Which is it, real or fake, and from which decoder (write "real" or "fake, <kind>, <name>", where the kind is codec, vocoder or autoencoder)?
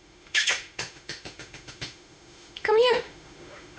fake, autoencoder, DAC-VAE